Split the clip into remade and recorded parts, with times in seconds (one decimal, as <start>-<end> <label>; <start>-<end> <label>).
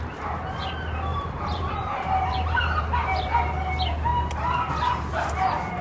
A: 0.0-1.1 recorded; 1.1-2.8 remade; 2.8-5.8 recorded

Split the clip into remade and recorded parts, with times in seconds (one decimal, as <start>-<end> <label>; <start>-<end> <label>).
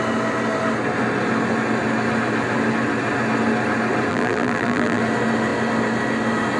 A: 0.0-4.1 recorded; 4.1-5.0 remade; 5.0-6.6 recorded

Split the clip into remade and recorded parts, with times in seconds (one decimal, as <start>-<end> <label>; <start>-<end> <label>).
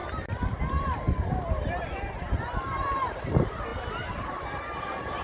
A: 0.0-5.2 remade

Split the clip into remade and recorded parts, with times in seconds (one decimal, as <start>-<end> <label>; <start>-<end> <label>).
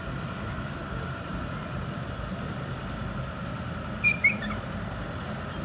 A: 0.0-3.0 remade; 3.0-4.4 recorded; 4.4-5.6 remade